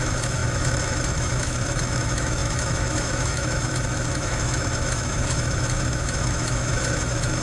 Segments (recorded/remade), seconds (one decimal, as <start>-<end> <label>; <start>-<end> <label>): 0.0-7.4 remade